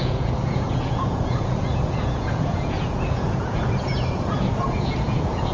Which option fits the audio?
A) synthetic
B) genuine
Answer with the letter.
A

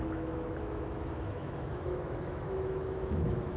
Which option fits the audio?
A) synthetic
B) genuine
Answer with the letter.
A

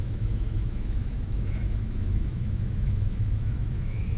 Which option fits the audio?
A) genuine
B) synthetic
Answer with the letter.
B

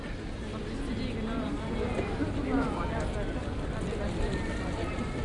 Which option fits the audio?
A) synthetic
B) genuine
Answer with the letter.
B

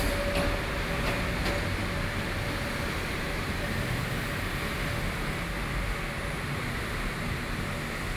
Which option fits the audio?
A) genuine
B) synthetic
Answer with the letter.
A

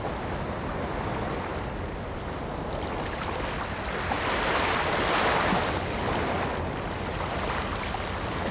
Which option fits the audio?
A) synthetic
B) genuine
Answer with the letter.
B